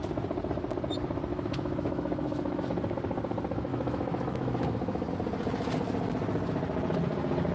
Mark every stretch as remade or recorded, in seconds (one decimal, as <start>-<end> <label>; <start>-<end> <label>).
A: 0.0-1.3 recorded; 1.3-2.6 remade; 2.6-3.7 recorded; 3.7-5.1 remade; 5.1-7.5 recorded